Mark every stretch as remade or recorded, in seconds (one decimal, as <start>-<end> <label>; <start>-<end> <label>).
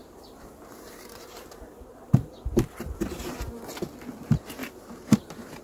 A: 0.0-3.4 remade; 3.4-4.6 recorded; 4.6-5.6 remade